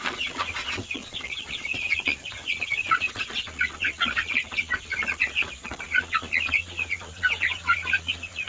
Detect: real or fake fake